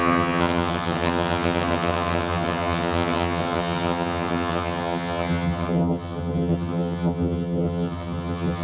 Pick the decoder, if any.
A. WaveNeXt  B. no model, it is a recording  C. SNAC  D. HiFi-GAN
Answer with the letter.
D